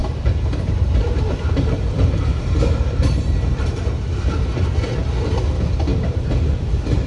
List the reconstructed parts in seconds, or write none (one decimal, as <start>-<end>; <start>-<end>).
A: 0.0-4.3; 5.9-6.6